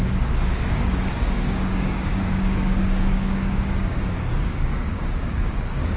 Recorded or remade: remade